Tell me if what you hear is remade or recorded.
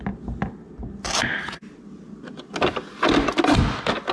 recorded